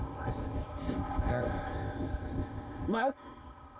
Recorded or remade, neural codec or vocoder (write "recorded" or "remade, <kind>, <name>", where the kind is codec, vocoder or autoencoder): remade, codec, ZipCodec